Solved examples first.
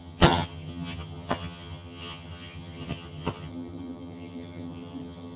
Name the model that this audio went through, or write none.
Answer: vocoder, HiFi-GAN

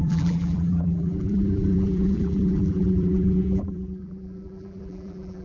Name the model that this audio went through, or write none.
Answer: vocoder, BigVGAN v2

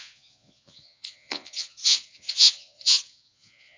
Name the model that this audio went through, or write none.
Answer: vocoder, Vocos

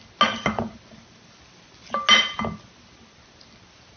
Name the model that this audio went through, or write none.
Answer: none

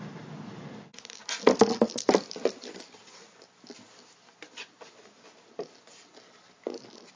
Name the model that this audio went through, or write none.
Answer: none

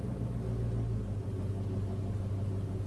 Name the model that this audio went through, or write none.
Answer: none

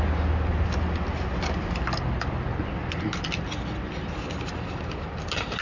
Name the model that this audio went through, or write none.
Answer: none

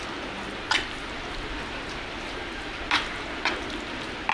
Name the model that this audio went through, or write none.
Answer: none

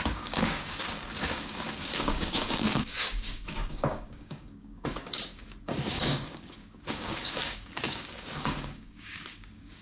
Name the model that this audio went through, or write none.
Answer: codec, DAC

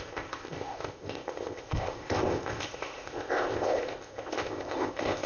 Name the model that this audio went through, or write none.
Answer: codec, ZipCodec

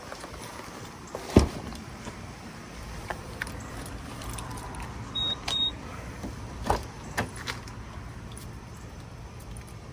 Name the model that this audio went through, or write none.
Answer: vocoder, BigVGAN v2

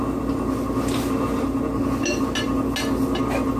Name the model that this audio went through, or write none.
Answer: none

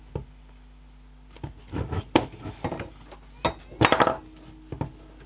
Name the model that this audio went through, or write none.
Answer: none